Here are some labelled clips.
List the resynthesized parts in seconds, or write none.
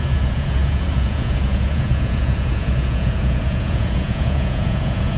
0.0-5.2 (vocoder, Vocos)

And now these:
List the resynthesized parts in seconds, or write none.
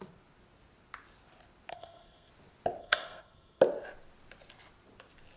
1.7-2.3 (codec, SNAC); 2.8-3.6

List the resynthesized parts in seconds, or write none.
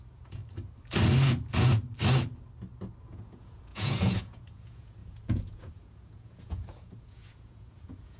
0.0-0.4 (vocoder, Vocos); 3.0-8.2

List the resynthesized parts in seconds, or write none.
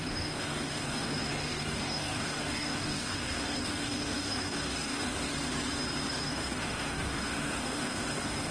0.0-5.3 (codec, DAC); 6.1-8.5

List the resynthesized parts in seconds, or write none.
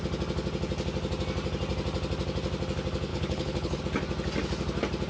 3.1-3.8 (codec, HILCodec)